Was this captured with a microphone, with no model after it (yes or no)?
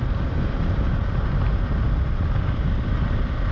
yes